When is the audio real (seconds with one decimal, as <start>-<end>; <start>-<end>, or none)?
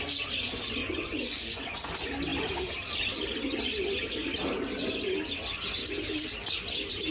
0.0-0.8; 1.6-7.1